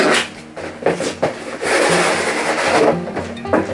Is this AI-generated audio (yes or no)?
no